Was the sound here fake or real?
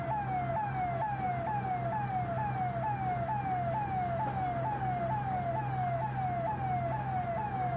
real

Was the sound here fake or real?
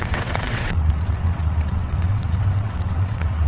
fake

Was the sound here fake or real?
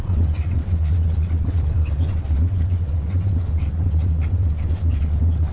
fake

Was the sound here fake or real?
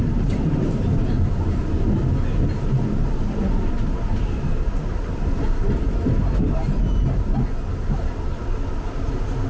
real